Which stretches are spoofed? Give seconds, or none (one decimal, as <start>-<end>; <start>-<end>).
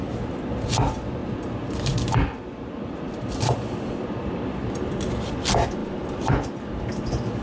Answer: 5.8-6.8